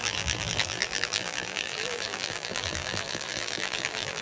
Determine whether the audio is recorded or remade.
remade